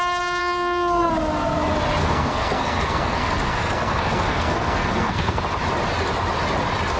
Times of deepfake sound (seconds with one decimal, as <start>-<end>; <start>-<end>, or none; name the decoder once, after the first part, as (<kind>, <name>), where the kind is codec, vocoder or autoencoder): 0.4-1.1 (codec, SNAC); 2.0-5.4